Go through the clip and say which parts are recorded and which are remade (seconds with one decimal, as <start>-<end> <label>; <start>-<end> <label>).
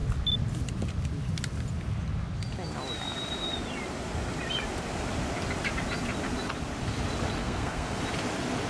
0.0-7.4 recorded; 7.4-8.0 remade; 8.0-8.7 recorded